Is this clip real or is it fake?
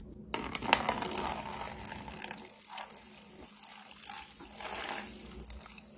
real